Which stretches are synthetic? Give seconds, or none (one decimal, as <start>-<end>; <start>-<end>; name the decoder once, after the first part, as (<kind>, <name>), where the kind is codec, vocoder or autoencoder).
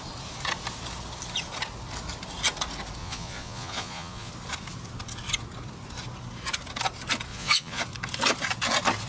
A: 3.0-4.3 (vocoder, Vocos); 7.3-7.8